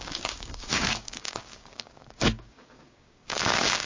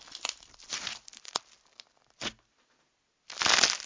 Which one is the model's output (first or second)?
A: first